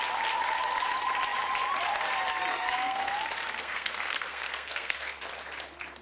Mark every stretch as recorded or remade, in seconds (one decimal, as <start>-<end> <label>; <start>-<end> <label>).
0.0-2.5 recorded; 2.5-3.1 remade; 3.1-3.6 recorded; 3.6-5.2 remade; 5.2-6.0 recorded